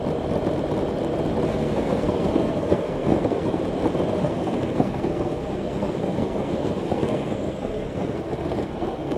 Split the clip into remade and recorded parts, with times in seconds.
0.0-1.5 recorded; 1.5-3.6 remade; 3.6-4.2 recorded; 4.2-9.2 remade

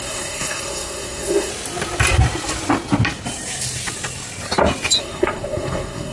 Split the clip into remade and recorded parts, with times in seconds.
0.0-1.5 remade; 1.5-5.0 recorded; 5.0-6.1 remade

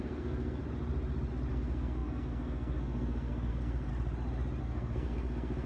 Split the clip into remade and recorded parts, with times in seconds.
0.0-0.6 remade; 0.6-1.5 recorded; 1.5-3.9 remade; 3.9-4.6 recorded; 4.6-5.7 remade

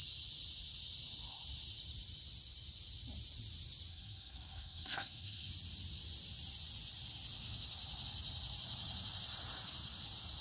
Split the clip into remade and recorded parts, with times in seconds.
0.0-3.9 recorded; 3.9-5.5 remade; 5.5-10.4 recorded